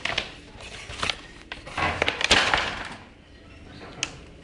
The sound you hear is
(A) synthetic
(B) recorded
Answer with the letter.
B